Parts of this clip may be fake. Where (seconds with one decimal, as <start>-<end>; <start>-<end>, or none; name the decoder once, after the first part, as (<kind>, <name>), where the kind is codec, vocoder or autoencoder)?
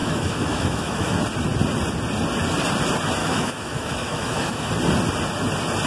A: 0.0-1.1 (autoencoder, DAC-VAE); 3.2-4.7